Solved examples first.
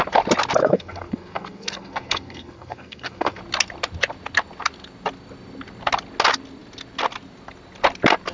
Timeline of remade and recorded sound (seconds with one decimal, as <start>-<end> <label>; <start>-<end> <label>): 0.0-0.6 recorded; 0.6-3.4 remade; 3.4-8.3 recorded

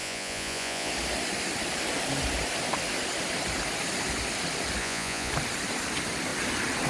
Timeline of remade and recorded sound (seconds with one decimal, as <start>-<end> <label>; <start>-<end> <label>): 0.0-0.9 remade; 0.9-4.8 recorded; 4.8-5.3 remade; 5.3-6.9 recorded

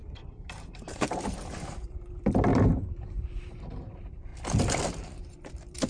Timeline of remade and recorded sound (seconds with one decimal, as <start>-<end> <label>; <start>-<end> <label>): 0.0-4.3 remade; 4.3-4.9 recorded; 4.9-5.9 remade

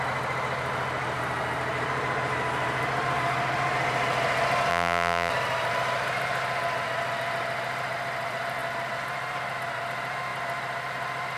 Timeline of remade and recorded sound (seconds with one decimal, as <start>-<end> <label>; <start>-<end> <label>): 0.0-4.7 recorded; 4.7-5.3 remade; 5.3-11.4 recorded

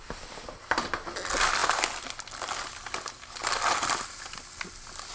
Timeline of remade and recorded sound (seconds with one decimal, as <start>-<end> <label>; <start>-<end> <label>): 0.0-5.1 recorded